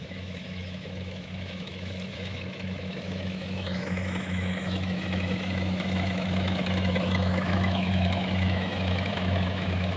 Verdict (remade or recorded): remade